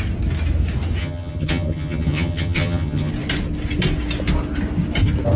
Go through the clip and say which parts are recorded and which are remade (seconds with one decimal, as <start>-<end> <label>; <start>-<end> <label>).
0.0-1.0 recorded; 1.0-3.1 remade; 3.1-5.4 recorded